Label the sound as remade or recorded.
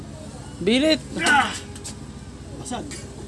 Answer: recorded